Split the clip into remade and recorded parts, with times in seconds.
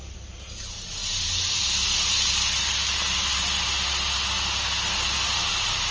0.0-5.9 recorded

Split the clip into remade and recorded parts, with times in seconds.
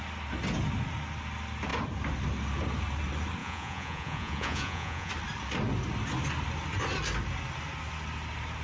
0.0-3.4 recorded; 3.4-5.1 remade; 5.1-8.6 recorded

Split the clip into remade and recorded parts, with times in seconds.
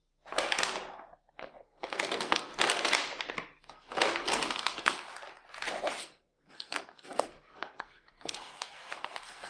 0.0-1.4 recorded; 1.4-2.5 remade; 2.5-3.6 recorded; 3.6-5.1 remade; 5.1-6.0 recorded; 6.0-9.5 remade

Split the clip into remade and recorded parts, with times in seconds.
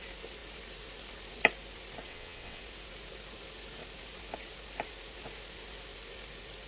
0.0-2.1 recorded; 2.1-2.6 remade; 2.6-6.7 recorded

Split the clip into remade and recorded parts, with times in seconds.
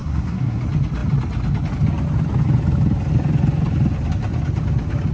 0.0-0.6 remade; 0.6-5.1 recorded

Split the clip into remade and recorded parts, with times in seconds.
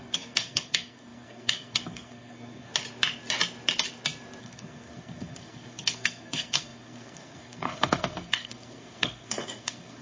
0.0-2.7 remade; 2.7-4.4 recorded; 4.4-10.0 remade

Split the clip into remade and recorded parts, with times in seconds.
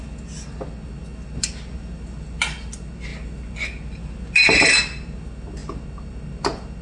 0.0-6.8 recorded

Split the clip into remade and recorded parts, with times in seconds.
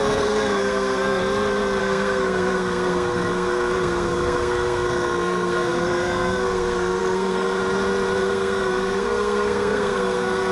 0.0-1.2 remade; 1.2-1.8 recorded; 1.8-7.6 remade; 7.6-8.2 recorded; 8.2-10.5 remade